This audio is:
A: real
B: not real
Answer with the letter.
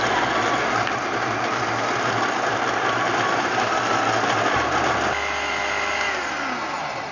A